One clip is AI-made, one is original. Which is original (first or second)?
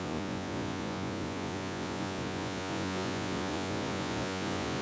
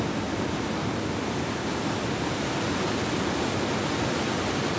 second